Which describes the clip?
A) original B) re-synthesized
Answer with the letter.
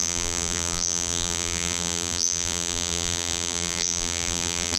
B